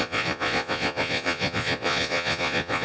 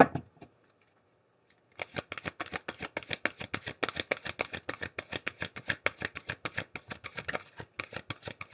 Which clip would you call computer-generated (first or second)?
first